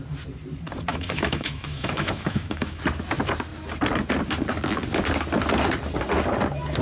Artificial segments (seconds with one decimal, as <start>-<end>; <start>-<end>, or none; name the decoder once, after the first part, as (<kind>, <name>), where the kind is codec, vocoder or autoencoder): 0.9-2.8 (autoencoder, DAC-VAE)